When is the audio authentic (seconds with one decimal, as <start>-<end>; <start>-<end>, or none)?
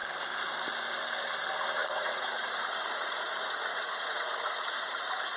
0.0-1.9